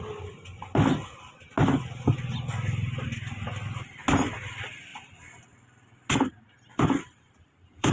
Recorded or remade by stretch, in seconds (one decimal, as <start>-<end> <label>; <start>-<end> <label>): 0.0-6.7 recorded; 6.7-7.9 remade